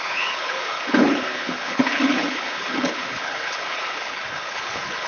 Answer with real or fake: fake